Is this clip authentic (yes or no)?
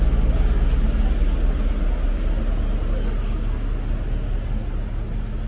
yes